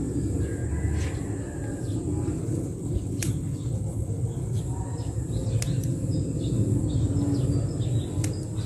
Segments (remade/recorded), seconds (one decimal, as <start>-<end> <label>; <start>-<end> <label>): 0.0-2.4 recorded; 2.4-4.6 remade; 4.6-8.7 recorded